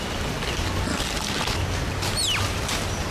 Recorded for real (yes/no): yes